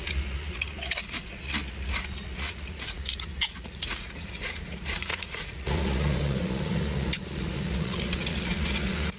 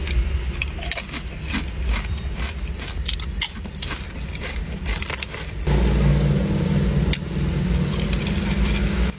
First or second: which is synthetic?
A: first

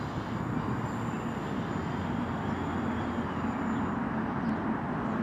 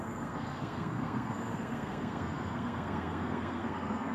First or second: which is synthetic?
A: second